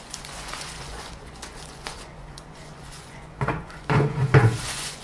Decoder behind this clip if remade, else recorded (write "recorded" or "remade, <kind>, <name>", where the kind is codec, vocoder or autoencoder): remade, vocoder, Vocos